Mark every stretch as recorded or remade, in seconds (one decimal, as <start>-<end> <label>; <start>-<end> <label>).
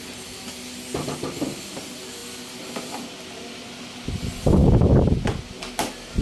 0.0-6.2 recorded